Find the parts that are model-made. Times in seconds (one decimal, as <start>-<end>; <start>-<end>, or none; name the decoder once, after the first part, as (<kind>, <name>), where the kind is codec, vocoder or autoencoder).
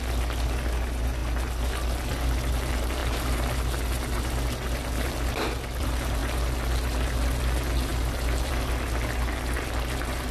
none